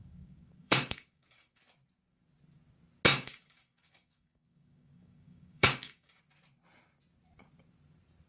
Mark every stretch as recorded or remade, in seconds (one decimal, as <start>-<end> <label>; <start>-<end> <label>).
0.0-1.6 remade; 1.6-3.1 recorded; 3.1-6.2 remade; 6.2-8.3 recorded